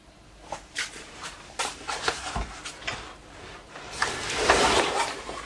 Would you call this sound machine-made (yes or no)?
yes